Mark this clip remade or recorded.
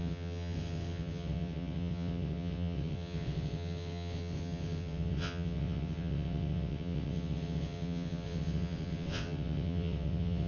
remade